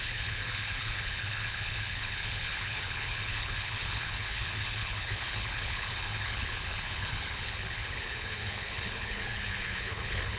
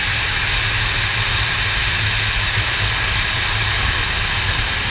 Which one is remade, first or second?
first